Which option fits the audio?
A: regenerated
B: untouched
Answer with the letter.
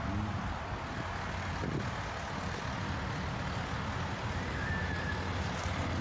B